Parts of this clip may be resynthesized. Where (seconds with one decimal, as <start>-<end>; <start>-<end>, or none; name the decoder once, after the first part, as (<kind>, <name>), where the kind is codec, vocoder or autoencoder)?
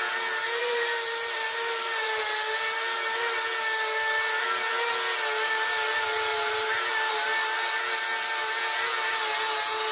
0.6-2.2 (vocoder, BigVGAN v2); 6.3-7.1